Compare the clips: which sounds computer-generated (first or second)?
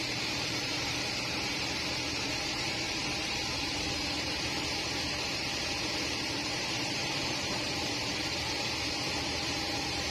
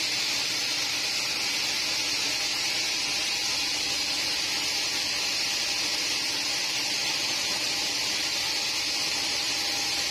first